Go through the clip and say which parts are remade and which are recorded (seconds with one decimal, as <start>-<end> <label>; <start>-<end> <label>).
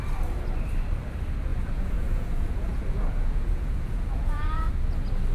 0.0-1.5 recorded; 1.5-4.7 remade; 4.7-5.3 recorded